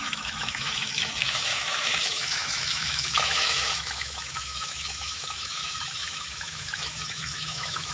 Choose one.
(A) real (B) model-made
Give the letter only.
B